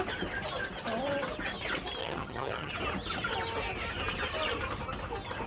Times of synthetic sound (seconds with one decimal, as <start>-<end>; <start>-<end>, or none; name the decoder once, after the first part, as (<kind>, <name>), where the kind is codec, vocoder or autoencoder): 2.0-2.7 (vocoder, HiFi-GAN)